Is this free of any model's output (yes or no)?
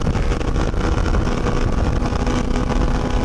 yes